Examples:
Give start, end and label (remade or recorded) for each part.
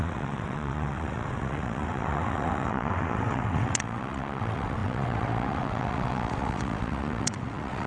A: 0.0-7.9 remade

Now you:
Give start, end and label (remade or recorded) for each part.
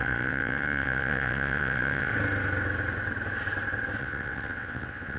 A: 0.0-2.1 remade; 2.1-4.0 recorded; 4.0-5.2 remade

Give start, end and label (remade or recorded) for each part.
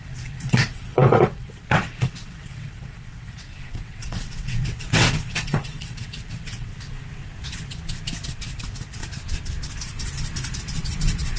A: 0.0-6.7 remade; 6.7-8.6 recorded; 8.6-9.0 remade; 9.0-10.6 recorded; 10.6-11.4 remade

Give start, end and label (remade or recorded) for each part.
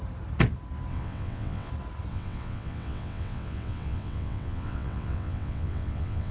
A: 0.0-0.9 recorded; 0.9-1.7 remade; 1.7-2.1 recorded; 2.1-6.3 remade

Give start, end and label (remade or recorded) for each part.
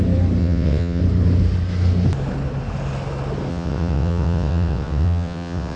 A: 0.0-0.4 recorded; 0.4-1.0 remade; 1.0-3.5 recorded; 3.5-5.8 remade